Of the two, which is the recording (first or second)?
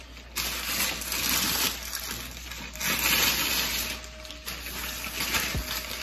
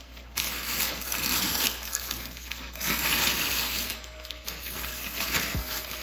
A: first